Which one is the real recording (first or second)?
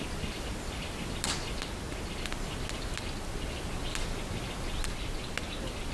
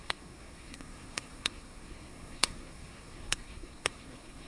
first